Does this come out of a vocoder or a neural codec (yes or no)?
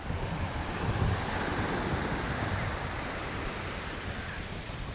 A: no